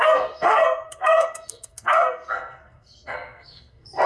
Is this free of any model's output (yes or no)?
no